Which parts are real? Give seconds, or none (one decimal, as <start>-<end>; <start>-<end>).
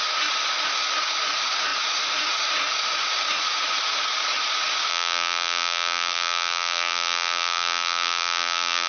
0.0-4.9